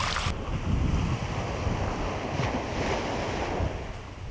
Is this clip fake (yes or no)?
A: no